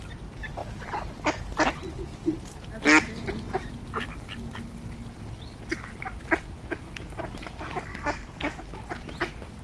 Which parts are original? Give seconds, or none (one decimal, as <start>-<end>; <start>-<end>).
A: 0.0-7.9; 8.6-9.6

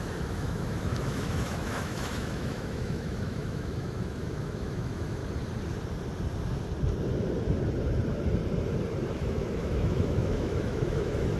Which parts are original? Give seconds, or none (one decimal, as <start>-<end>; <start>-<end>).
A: 5.2-9.1

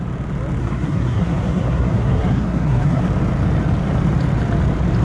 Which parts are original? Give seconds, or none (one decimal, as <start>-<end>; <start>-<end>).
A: 0.0-0.6; 3.0-5.0

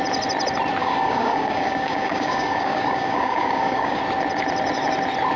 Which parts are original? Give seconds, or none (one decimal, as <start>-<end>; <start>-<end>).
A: 0.0-0.8; 4.0-5.4

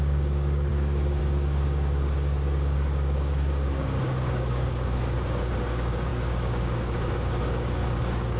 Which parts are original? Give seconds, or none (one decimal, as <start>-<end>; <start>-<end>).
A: none

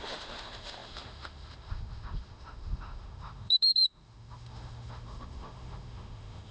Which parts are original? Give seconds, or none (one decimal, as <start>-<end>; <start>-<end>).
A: none

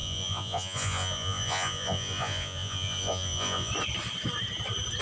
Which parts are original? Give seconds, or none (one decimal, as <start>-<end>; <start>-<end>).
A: 3.7-5.0

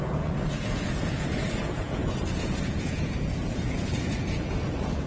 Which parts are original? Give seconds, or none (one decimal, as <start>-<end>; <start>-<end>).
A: none